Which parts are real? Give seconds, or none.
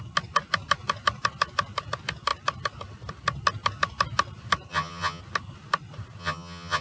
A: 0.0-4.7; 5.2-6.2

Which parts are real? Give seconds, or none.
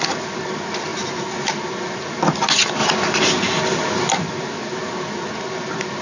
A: 0.0-6.0